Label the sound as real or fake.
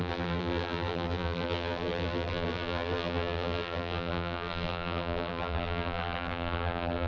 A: fake